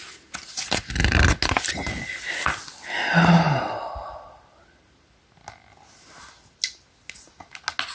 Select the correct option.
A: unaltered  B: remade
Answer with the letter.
A